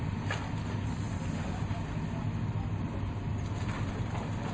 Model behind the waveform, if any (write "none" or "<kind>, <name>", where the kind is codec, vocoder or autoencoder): none